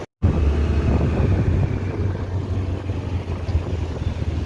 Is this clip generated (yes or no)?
no